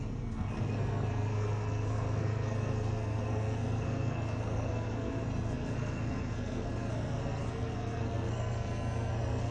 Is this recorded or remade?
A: remade